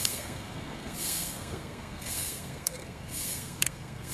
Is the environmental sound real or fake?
fake